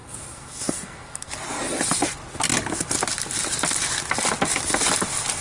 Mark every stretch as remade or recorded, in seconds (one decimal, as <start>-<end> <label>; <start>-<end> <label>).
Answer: 0.0-1.3 remade; 1.3-5.4 recorded